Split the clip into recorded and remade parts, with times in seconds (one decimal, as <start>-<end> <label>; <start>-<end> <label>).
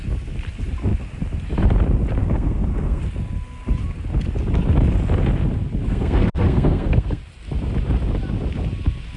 0.0-2.2 recorded; 2.2-3.0 remade; 3.0-5.9 recorded; 5.9-7.2 remade; 7.2-9.2 recorded